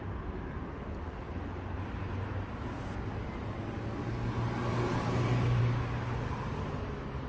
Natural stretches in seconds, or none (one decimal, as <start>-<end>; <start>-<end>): 0.0-4.7; 5.6-7.3